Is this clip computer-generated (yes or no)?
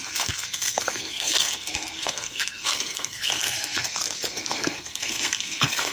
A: yes